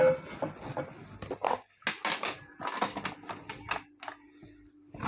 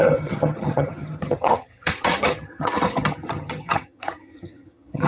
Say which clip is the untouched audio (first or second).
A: first